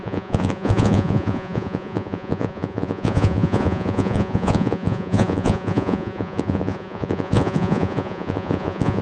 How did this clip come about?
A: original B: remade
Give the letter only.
B